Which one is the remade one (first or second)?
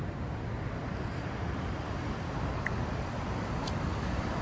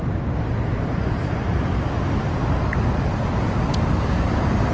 first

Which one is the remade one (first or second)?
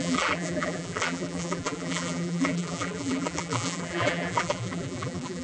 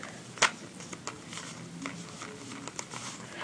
first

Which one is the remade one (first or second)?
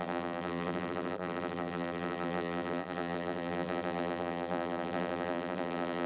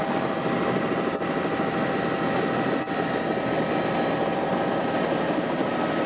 first